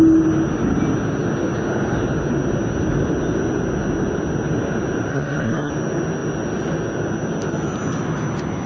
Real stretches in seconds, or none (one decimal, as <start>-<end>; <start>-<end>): 0.0-5.1; 5.7-8.7